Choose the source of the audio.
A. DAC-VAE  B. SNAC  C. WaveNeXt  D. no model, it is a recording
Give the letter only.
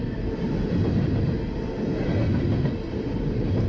D